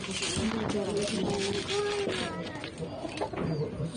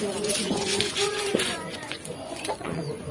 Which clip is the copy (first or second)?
second